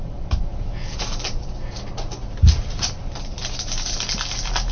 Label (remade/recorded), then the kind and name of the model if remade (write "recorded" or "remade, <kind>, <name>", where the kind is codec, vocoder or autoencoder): recorded